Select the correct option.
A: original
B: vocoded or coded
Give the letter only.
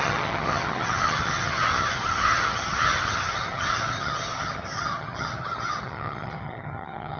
B